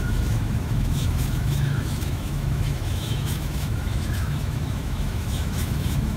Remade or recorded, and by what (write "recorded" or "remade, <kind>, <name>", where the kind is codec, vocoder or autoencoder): remade, autoencoder, DAC-VAE